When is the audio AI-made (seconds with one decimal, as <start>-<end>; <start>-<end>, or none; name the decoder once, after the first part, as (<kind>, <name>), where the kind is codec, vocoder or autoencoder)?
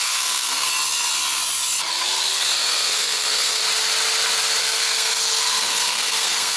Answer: 0.0-0.7 (codec, SNAC); 2.3-3.6; 4.6-6.6